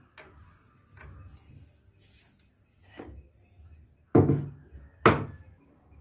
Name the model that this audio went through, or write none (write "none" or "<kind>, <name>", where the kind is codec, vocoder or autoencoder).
none